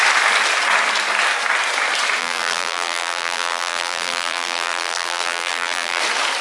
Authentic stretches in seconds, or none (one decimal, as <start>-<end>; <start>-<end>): 0.0-2.2; 6.0-6.4